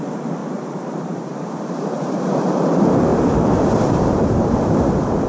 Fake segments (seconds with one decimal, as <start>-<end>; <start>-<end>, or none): 0.4-2.4; 3.1-5.3